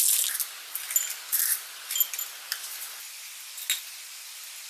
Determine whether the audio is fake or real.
real